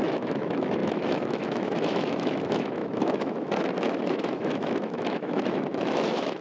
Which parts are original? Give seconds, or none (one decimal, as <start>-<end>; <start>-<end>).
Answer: none